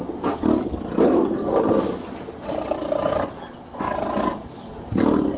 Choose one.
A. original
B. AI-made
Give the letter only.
A